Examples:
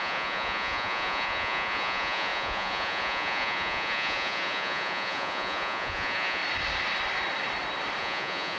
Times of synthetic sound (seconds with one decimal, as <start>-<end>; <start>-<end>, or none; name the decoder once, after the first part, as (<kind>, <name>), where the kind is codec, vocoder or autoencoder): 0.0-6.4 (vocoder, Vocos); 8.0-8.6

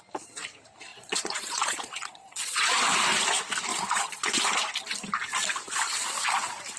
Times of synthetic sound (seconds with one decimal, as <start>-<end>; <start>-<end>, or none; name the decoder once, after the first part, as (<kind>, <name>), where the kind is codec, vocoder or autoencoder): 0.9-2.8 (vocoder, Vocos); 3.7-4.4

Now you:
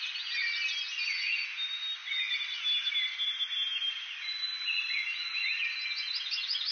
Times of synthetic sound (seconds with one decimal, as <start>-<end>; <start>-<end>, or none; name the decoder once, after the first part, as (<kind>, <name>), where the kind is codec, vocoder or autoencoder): none